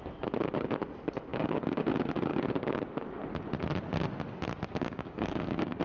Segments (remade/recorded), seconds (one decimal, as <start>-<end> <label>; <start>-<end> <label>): 0.0-1.3 recorded; 1.3-1.9 remade; 1.9-2.3 recorded; 2.3-2.8 remade; 2.8-4.7 recorded; 4.7-5.8 remade